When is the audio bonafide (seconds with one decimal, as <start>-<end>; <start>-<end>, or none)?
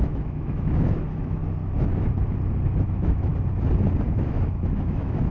1.4-2.8; 3.3-4.1